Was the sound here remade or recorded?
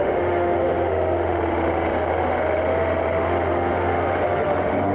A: remade